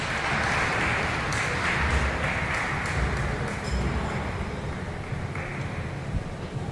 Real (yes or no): yes